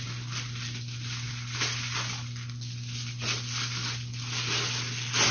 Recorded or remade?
recorded